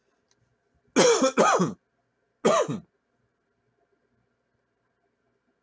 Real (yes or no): yes